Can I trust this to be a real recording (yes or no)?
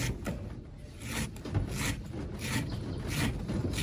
yes